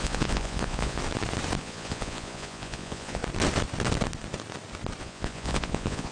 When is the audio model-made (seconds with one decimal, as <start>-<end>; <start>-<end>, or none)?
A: 0.0-1.0; 1.6-3.2; 5.0-6.1